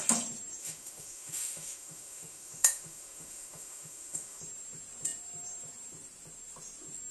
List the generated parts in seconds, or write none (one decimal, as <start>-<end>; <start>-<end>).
0.6-4.4